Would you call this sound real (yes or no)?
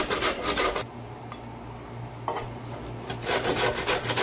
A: yes